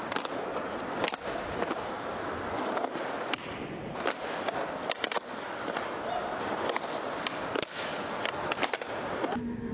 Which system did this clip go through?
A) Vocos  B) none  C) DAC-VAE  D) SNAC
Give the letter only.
B